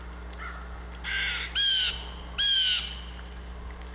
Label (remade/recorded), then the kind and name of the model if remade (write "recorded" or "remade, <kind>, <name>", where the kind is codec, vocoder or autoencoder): recorded